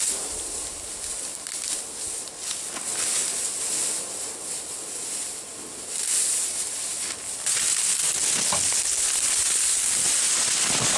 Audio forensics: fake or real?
real